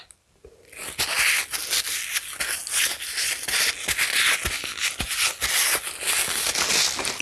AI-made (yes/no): no